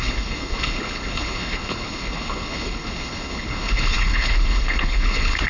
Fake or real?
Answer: fake